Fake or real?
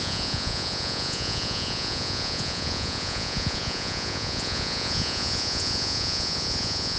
fake